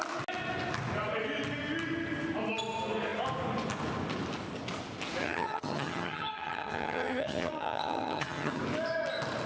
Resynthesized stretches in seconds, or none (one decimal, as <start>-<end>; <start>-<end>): 5.2-8.6